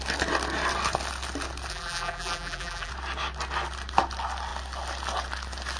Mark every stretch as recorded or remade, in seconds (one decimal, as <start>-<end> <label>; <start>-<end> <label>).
0.0-1.7 recorded; 1.7-2.9 remade; 2.9-5.8 recorded